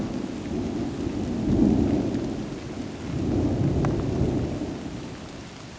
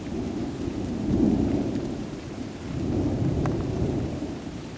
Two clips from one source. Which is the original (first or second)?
first